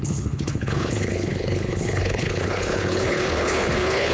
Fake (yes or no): yes